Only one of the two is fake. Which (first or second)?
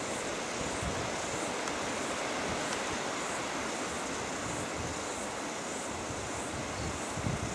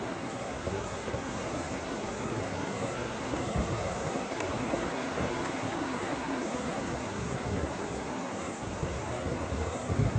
second